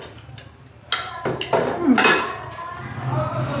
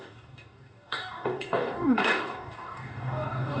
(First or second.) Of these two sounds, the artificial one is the second